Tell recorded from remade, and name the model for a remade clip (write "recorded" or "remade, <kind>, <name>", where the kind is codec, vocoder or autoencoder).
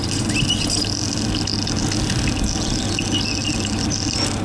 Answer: recorded